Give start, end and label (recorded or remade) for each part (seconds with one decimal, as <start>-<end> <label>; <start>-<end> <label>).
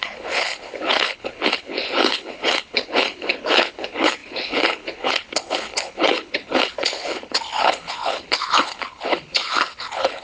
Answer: 0.0-10.2 remade